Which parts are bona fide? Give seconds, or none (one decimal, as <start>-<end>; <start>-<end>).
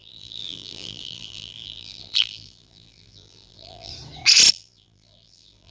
3.9-4.5